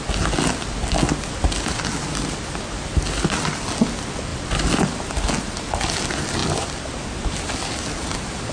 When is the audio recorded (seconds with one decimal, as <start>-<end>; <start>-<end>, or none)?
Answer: 0.0-4.3; 5.3-6.4; 7.3-8.5